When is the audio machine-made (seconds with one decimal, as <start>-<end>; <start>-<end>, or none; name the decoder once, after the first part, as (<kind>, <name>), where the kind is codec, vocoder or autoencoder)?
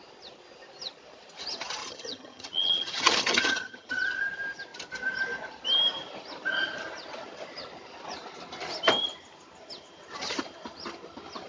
1.8-3.9 (vocoder, HiFi-GAN)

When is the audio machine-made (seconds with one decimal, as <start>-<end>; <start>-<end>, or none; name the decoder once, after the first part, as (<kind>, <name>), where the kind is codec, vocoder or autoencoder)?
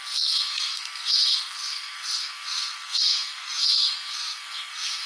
0.0-5.1 (codec, SNAC)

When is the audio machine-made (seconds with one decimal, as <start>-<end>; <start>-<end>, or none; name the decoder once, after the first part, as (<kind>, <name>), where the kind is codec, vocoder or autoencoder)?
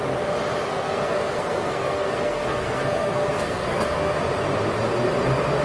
0.7-4.1 (codec, SNAC)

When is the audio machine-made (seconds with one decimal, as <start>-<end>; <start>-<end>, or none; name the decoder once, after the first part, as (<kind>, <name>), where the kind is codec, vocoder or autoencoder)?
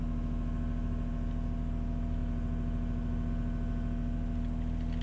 none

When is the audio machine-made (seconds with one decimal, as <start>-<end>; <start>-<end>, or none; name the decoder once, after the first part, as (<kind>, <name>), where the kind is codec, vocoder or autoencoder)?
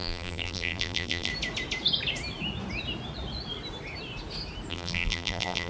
0.0-1.3 (vocoder, BigVGAN v2); 4.7-5.7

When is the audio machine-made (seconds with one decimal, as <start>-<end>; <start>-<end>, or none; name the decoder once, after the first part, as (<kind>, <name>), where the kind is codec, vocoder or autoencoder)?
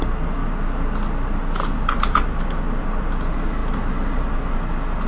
none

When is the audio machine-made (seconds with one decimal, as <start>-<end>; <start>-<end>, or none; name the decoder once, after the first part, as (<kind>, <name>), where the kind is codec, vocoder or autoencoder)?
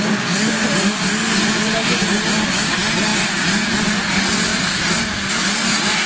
4.5-5.1 (vocoder, BigVGAN v2)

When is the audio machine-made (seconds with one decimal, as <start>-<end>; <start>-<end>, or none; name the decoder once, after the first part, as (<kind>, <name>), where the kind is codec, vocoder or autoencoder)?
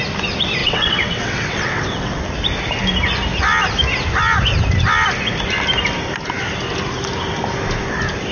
0.6-2.2 (vocoder, WaveNeXt)